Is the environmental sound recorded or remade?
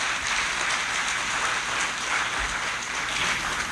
recorded